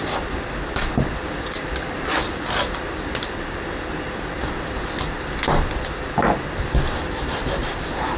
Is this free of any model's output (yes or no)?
yes